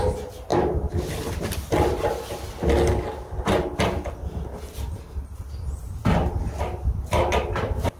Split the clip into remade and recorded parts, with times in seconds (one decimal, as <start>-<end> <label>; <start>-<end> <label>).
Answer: 0.0-8.0 recorded